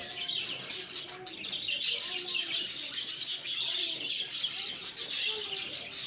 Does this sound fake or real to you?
real